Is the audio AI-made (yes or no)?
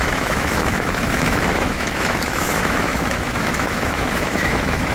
yes